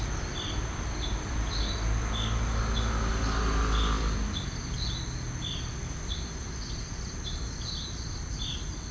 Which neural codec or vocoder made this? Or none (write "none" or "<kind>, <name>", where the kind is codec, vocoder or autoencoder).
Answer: none